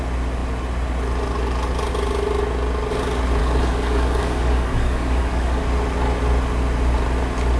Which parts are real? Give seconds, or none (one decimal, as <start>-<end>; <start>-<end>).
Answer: 0.0-3.4; 5.6-7.6